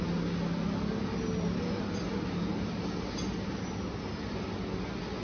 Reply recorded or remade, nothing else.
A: recorded